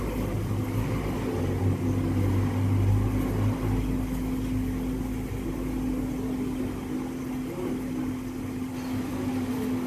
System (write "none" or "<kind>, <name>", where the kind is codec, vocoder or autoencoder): none